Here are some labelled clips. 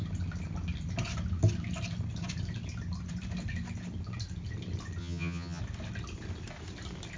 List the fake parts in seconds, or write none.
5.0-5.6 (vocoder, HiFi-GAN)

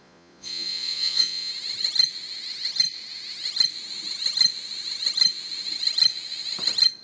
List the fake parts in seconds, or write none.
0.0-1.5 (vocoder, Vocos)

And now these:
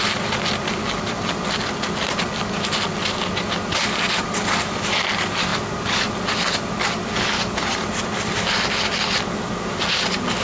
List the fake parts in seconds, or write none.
none

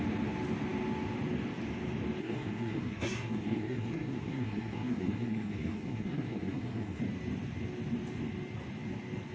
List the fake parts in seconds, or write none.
2.2-7.0 (codec, SNAC)